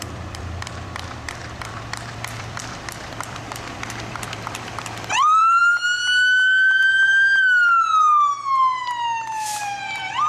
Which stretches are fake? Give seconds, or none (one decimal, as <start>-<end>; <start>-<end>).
0.0-5.6; 9.6-10.3